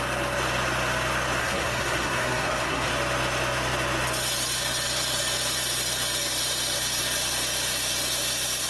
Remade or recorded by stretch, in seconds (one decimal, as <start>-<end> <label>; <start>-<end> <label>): 0.0-1.4 recorded; 1.4-2.9 remade; 2.9-8.7 recorded